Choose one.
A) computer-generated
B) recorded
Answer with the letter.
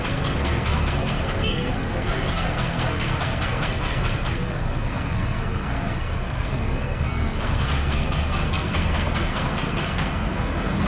A